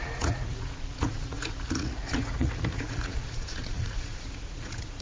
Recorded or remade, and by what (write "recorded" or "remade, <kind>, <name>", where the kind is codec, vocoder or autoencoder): remade, vocoder, Vocos